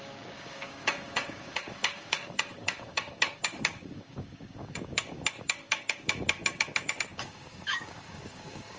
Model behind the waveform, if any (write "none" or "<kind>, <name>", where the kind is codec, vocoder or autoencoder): codec, DAC